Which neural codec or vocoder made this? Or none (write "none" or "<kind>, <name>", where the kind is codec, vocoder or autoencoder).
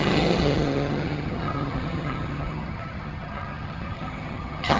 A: vocoder, HiFi-GAN